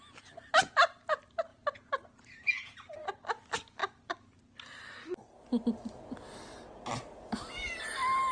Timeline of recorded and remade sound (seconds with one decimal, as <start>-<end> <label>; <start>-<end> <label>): 0.0-8.3 recorded